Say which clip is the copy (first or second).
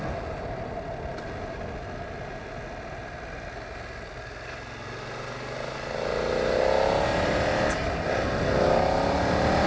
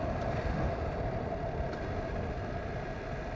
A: second